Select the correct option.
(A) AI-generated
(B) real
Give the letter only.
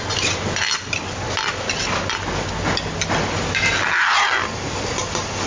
B